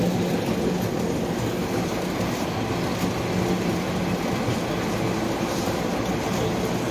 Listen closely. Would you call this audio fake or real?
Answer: real